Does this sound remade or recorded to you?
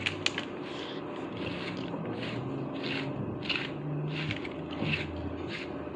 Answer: recorded